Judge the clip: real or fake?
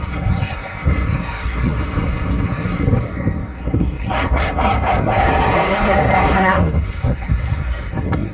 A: fake